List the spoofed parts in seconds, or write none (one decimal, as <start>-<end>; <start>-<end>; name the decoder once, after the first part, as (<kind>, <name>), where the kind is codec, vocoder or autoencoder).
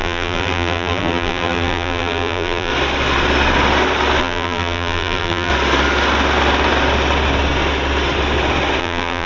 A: 0.0-2.7 (vocoder, BigVGAN v2); 4.2-5.5; 8.8-9.3